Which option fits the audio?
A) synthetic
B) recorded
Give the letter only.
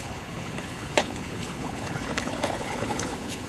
A